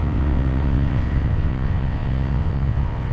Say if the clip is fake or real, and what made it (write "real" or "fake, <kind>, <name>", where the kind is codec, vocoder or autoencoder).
fake, vocoder, WaveNeXt